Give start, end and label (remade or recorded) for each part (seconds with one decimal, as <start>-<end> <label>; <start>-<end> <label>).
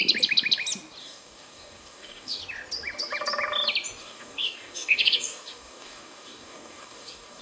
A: 0.0-1.0 recorded; 1.0-2.4 remade; 2.4-4.0 recorded; 4.0-7.4 remade